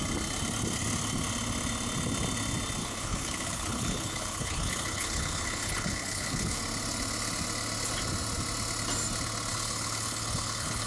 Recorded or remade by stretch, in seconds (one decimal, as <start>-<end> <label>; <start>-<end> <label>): 0.0-2.8 recorded; 2.8-6.6 remade; 6.6-9.5 recorded; 9.5-10.9 remade